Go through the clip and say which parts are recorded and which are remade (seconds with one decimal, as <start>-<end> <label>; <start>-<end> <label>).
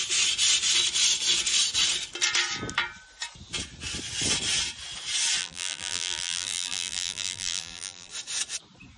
0.0-5.4 recorded; 5.4-8.1 remade; 8.1-9.0 recorded